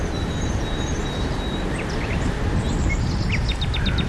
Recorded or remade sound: remade